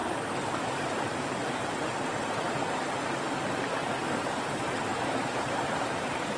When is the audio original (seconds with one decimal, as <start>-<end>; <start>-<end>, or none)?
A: 2.7-4.9; 5.7-6.4